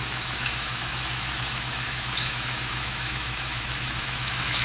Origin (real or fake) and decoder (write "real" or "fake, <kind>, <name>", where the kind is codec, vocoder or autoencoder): fake, autoencoder, DAC-VAE